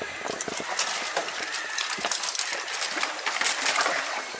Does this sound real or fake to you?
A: real